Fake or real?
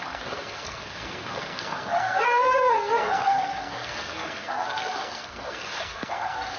fake